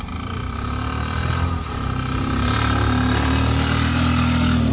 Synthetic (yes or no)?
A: no